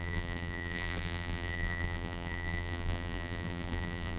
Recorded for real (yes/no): no